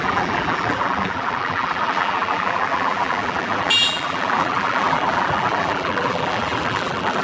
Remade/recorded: remade